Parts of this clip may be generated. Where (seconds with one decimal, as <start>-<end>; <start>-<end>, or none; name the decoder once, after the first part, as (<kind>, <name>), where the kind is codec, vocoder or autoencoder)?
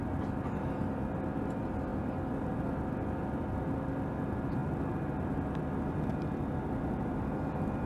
none